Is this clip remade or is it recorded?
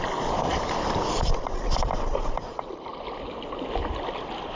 recorded